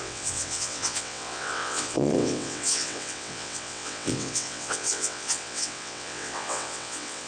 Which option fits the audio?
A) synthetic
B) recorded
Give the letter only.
A